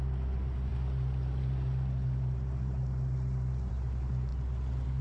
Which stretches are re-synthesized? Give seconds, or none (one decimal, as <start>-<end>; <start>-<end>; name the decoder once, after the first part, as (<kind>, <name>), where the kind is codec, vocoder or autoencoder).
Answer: none